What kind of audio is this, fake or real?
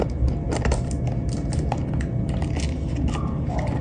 real